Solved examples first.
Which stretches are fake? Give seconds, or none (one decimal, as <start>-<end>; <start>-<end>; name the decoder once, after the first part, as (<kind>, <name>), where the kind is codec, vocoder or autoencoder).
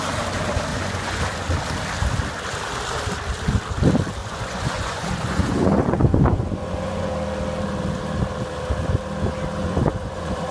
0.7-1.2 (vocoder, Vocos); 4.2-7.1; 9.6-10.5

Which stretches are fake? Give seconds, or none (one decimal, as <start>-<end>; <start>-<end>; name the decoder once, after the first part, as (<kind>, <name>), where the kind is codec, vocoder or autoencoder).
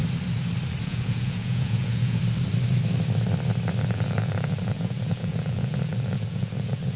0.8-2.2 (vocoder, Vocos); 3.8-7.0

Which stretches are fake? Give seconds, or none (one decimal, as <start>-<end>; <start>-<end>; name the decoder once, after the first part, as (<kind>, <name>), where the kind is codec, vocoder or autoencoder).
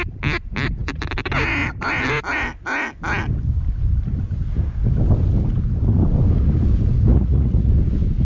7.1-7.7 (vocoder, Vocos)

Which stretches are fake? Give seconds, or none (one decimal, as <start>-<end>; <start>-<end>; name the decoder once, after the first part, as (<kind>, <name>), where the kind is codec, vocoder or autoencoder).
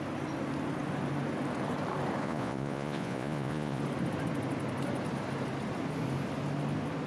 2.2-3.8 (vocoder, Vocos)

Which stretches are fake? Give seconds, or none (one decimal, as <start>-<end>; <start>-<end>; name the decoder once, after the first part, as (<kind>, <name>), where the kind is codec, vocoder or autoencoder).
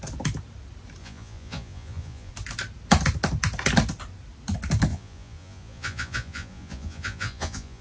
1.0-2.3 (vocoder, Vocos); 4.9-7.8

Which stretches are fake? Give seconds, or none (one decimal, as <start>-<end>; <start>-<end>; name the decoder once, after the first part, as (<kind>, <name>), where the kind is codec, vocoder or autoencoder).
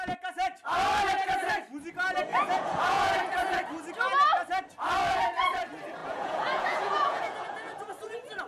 2.3-3.1 (vocoder, Vocos); 6.0-7.9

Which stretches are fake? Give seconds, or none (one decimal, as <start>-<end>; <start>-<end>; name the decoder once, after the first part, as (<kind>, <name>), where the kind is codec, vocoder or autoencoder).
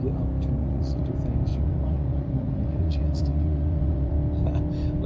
0.6-1.1 (vocoder, Vocos); 1.5-4.1